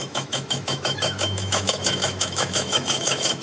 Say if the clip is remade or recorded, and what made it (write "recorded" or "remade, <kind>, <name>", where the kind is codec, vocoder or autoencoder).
remade, autoencoder, DAC-VAE